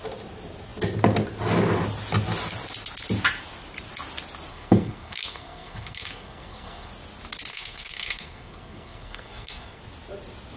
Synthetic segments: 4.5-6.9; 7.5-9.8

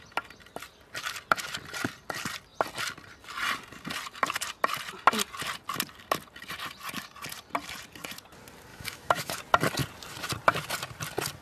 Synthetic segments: 8.7-9.4

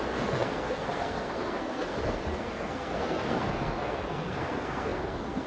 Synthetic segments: 0.0-5.5

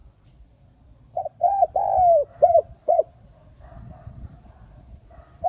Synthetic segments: 0.0-1.7; 2.3-5.5

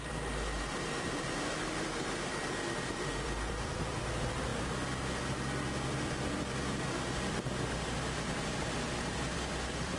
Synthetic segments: 0.0-4.5; 5.7-10.0

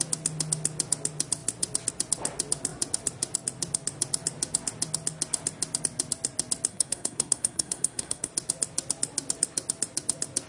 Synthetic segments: 6.7-8.3